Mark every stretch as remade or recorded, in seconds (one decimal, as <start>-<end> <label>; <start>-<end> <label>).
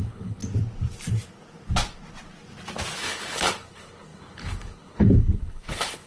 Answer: 0.0-0.4 remade; 0.4-3.0 recorded; 3.0-6.1 remade